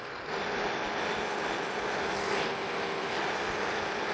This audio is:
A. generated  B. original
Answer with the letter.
B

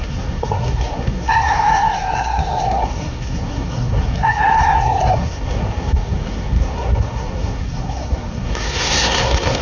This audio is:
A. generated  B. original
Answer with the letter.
A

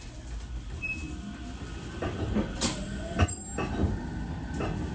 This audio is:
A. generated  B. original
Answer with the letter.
B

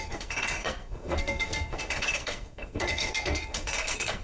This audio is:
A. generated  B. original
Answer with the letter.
A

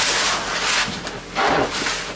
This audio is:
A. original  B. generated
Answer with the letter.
A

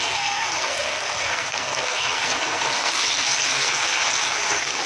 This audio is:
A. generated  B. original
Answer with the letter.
A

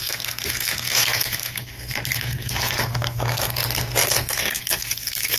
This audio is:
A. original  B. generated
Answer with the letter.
B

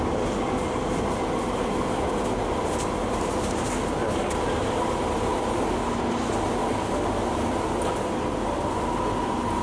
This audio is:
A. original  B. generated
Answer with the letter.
A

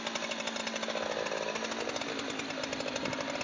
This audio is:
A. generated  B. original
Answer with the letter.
B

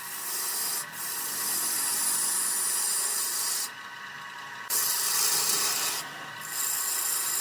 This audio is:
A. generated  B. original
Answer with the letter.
B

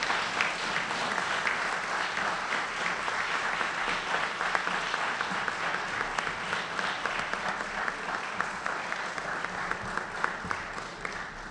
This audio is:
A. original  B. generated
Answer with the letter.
A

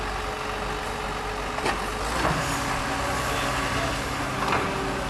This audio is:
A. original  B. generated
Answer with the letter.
A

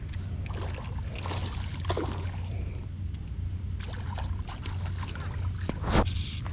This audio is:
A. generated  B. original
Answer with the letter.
B